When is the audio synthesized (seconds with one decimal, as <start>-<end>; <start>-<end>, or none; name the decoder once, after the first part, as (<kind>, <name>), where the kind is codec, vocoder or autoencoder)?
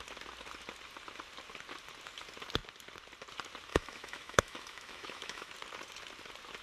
3.7-5.5 (autoencoder, DAC-VAE)